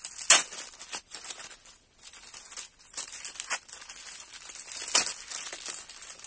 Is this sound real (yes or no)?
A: yes